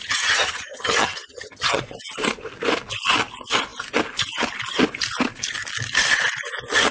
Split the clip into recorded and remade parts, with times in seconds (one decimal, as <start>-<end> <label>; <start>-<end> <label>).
0.0-1.8 remade; 1.8-6.9 recorded